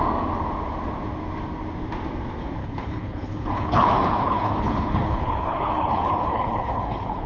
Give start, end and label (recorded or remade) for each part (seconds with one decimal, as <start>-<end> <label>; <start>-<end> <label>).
0.0-2.6 recorded; 2.6-7.3 remade